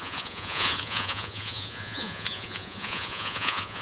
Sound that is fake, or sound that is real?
fake